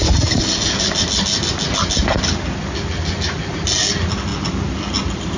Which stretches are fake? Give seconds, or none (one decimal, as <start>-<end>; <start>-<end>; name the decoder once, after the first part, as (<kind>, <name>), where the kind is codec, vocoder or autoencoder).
none

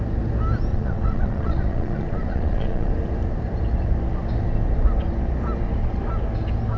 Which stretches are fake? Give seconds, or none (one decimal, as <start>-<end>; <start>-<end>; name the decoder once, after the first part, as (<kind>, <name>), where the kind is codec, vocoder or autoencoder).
0.7-2.9 (vocoder, Vocos)

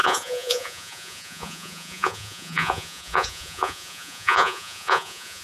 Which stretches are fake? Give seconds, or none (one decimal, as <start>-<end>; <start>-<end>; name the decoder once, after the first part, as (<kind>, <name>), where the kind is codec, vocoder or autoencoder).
0.0-5.4 (vocoder, Vocos)

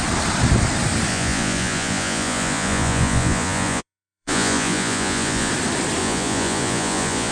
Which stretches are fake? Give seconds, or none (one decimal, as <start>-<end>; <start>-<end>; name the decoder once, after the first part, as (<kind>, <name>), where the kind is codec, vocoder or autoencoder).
1.1-5.5 (vocoder, Vocos); 6.0-7.3

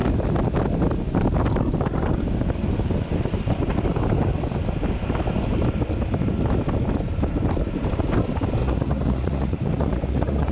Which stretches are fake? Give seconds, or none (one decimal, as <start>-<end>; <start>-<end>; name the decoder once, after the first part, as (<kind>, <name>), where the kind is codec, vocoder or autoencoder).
8.6-10.5 (vocoder, Vocos)

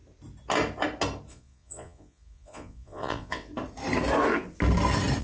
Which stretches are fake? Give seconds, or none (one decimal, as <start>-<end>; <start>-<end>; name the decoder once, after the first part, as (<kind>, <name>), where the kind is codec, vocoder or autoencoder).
1.3-3.5 (vocoder, Vocos)

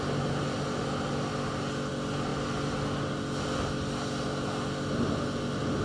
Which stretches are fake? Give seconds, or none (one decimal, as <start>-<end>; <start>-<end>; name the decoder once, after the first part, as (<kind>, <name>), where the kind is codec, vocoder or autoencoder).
none